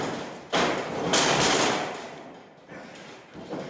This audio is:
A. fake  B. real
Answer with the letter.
B